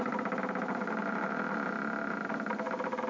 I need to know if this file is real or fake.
real